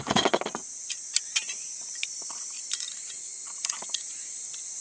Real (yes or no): yes